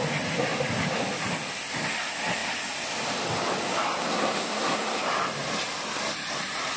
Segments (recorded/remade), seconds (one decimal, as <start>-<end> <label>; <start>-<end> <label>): 0.0-4.0 recorded; 4.0-5.0 remade; 5.0-6.8 recorded